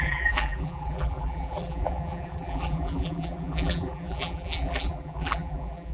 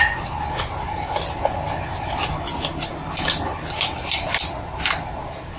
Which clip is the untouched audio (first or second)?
second